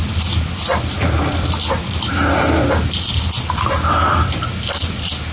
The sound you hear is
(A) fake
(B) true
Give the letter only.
B